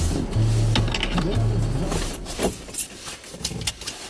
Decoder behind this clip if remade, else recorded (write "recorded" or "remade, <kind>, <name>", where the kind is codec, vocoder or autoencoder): recorded